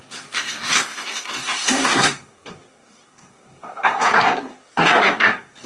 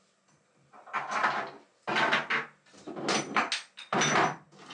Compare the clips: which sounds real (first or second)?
second